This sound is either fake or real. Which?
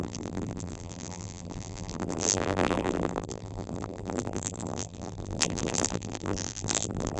fake